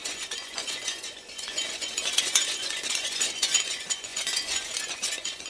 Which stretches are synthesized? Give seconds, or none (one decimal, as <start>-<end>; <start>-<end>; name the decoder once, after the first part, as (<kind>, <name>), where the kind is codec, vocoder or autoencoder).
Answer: 0.0-5.5 (vocoder, Vocos)